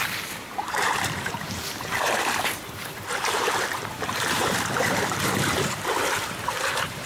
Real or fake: fake